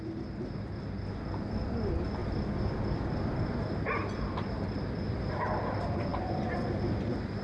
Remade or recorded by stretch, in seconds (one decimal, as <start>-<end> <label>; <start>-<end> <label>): 0.0-7.4 recorded